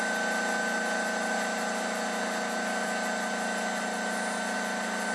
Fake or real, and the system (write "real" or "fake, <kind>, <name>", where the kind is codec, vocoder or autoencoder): real